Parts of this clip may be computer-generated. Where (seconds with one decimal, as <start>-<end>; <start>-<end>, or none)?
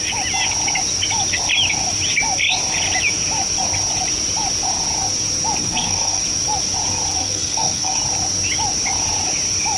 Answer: 5.6-6.2; 7.2-8.0